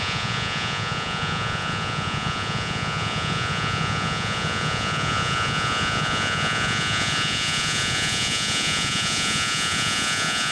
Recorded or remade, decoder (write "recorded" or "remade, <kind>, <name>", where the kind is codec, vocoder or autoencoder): remade, vocoder, Vocos